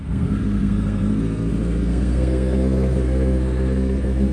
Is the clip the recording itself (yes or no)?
no